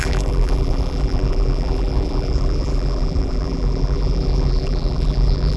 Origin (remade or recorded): remade